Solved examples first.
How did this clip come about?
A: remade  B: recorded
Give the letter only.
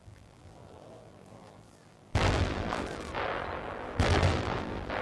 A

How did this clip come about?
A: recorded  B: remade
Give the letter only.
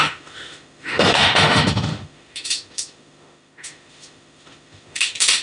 B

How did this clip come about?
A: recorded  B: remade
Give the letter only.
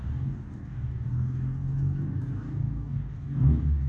B